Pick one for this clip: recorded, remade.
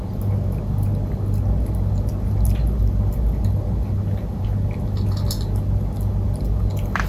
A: recorded